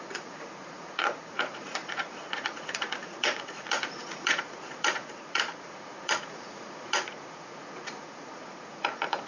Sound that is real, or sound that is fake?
fake